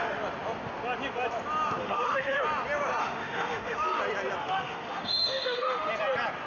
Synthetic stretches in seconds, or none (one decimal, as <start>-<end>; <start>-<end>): 1.8-2.4; 3.0-4.0; 4.4-5.9